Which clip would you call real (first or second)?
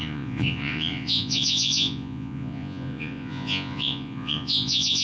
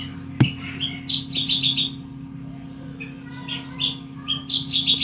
second